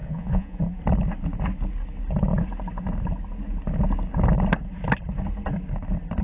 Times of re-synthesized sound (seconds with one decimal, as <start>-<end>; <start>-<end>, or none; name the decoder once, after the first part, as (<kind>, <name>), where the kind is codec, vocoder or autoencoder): 0.0-0.6 (vocoder, Vocos)